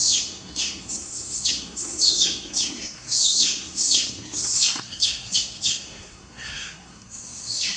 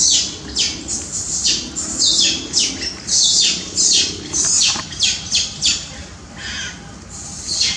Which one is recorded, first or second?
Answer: second